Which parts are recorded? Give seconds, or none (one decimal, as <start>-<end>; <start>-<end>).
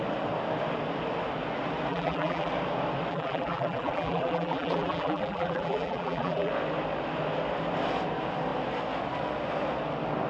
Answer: 0.0-1.9; 2.5-3.1; 6.5-10.3